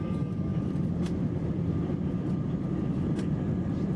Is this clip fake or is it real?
real